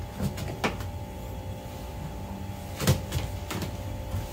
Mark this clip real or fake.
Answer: real